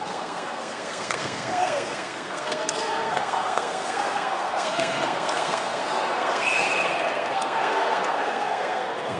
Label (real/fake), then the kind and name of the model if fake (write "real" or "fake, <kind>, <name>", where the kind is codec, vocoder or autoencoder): fake, codec, SNAC